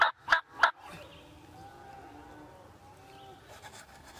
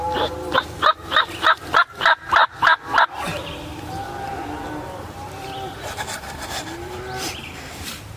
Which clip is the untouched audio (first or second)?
first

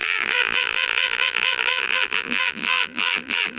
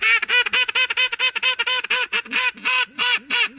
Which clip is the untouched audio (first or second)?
second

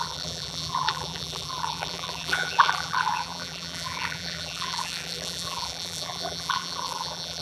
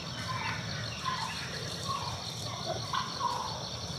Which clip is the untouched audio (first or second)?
second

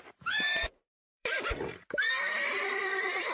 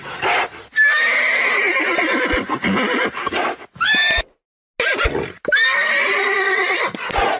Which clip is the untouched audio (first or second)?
second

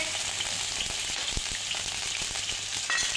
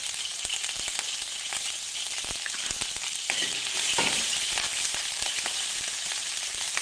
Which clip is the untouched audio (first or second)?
first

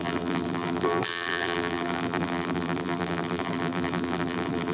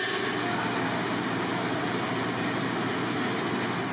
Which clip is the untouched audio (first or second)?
second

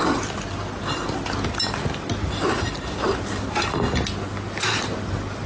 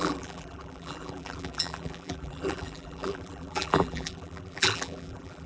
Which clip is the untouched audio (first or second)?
first